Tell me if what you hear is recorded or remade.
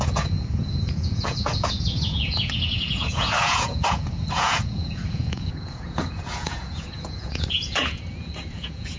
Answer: remade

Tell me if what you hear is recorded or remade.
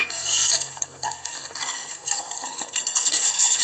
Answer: remade